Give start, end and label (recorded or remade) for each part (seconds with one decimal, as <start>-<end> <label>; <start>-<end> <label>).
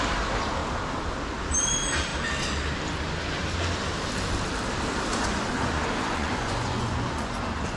0.0-5.1 recorded; 5.1-7.8 remade